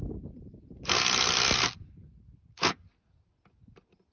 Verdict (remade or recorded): recorded